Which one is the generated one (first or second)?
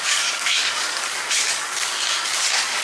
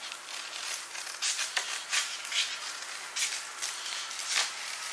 first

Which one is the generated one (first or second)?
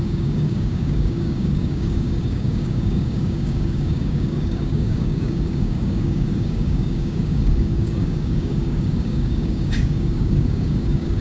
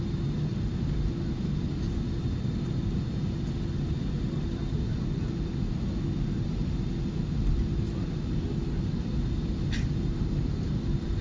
first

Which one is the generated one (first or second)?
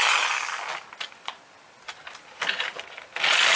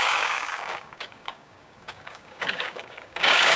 second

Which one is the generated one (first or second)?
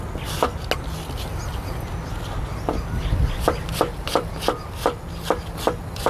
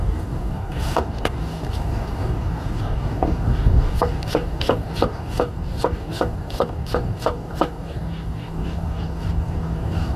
second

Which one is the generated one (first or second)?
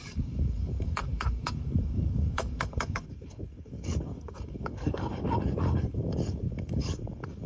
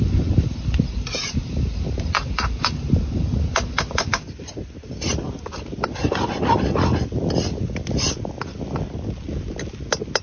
first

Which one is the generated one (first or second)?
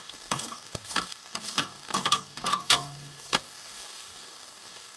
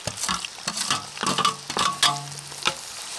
first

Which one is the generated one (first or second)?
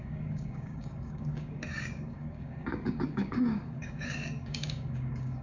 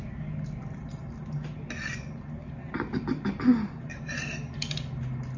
first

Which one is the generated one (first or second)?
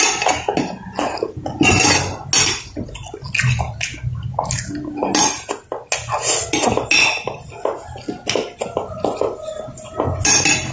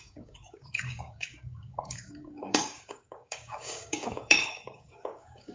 second